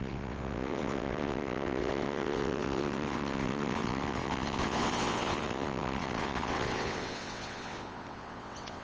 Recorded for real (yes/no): no